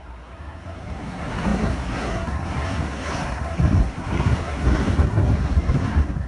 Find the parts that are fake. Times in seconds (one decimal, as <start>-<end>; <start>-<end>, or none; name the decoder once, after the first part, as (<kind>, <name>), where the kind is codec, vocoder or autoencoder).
0.0-6.3 (codec, SNAC)